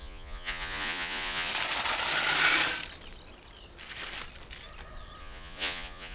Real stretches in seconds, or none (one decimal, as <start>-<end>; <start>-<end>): 1.5-5.2